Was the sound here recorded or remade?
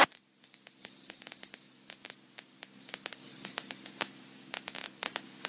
recorded